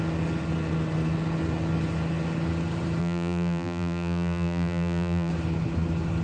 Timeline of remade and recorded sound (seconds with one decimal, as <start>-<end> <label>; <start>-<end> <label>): 0.0-3.0 recorded; 3.0-5.3 remade; 5.3-6.2 recorded